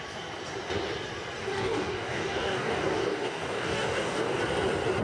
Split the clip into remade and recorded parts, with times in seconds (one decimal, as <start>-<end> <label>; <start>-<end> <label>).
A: 0.0-1.4 recorded; 1.4-4.4 remade; 4.4-5.0 recorded